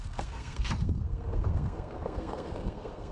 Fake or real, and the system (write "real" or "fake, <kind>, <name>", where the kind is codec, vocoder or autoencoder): fake, codec, SNAC